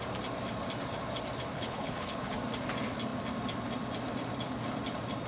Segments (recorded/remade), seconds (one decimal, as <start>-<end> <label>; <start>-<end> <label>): 0.0-1.5 recorded; 1.5-2.4 remade; 2.4-5.3 recorded